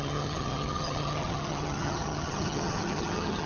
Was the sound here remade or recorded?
remade